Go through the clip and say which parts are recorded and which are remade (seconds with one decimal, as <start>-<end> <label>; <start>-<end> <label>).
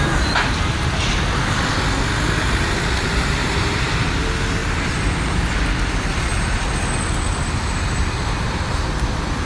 0.0-3.4 recorded; 3.4-4.0 remade; 4.0-4.6 recorded; 4.6-5.5 remade; 5.5-9.5 recorded